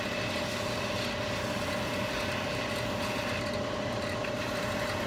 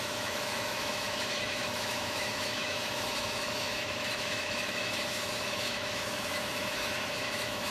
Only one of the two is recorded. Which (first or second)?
first